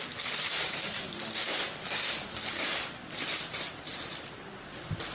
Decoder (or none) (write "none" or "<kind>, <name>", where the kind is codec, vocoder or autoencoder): vocoder, BigVGAN v2